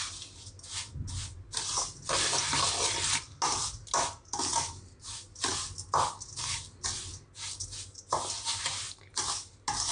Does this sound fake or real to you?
real